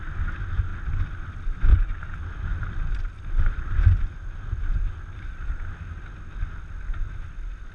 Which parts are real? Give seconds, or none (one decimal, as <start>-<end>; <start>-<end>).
0.0-1.7; 6.3-7.7

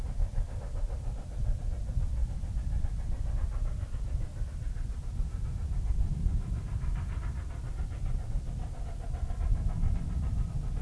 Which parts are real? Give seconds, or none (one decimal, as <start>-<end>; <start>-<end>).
0.0-10.8